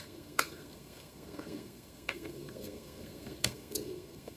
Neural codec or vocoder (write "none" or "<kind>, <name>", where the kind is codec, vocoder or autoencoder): codec, SNAC